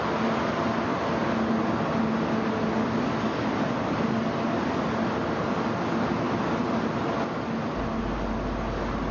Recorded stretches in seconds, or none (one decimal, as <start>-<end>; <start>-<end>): 0.0-9.1